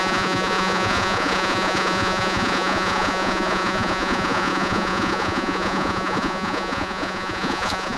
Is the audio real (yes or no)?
no